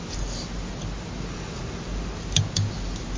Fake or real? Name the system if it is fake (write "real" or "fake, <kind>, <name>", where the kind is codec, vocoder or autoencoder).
real